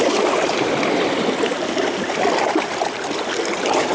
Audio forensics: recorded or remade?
recorded